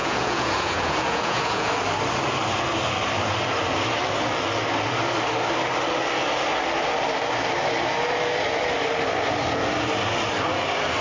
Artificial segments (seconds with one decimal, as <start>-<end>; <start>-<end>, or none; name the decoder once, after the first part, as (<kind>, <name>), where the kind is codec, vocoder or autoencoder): 0.0-1.7 (vocoder, Vocos)